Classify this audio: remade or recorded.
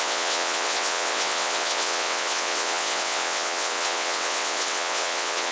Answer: remade